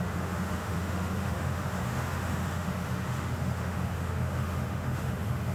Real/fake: fake